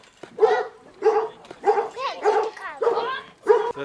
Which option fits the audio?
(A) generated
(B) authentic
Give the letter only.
A